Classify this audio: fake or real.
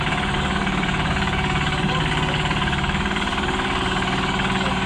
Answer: fake